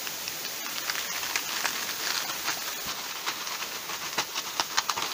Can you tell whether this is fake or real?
real